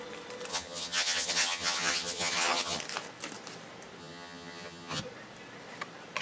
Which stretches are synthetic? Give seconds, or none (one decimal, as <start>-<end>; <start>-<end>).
0.5-2.8; 4.0-5.0